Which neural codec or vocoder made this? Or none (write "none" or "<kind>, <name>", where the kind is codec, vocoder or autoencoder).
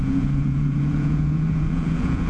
vocoder, Vocos